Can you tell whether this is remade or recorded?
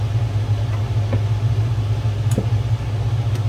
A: recorded